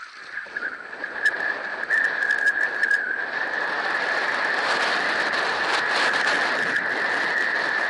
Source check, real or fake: real